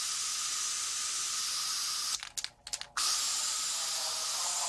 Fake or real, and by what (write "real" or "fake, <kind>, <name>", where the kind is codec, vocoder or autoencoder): real